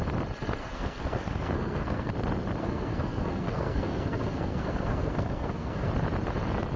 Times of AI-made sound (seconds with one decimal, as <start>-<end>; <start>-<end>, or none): 0.6-2.1; 2.6-5.9